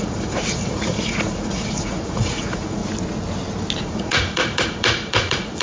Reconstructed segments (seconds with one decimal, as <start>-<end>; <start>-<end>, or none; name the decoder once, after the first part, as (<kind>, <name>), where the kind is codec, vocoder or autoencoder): 0.0-2.8 (vocoder, Vocos); 3.8-5.6